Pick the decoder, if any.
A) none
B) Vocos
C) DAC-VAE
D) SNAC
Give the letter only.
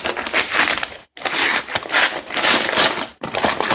A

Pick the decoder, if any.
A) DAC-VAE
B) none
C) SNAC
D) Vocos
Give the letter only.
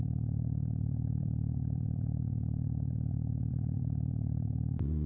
D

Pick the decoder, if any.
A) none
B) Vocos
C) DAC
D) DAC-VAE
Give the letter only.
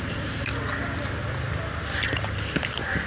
A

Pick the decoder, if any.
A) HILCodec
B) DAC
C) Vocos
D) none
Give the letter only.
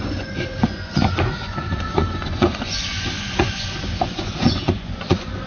C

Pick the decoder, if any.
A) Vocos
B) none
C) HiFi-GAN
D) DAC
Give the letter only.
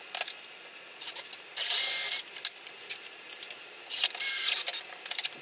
B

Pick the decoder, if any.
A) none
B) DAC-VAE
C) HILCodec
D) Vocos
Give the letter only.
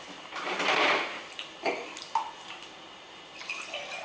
A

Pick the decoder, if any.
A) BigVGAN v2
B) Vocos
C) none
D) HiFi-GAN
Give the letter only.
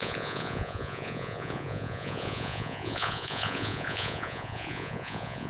B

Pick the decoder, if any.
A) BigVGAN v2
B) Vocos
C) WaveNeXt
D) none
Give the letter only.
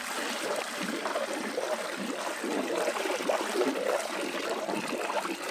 D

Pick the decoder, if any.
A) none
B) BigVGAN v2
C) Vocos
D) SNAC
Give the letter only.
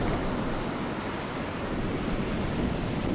A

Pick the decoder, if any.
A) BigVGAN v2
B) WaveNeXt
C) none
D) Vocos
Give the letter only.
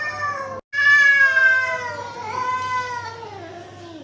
C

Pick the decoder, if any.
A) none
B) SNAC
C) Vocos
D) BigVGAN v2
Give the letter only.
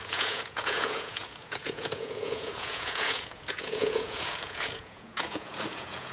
C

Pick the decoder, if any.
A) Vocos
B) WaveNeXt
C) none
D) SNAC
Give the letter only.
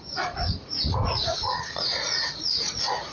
A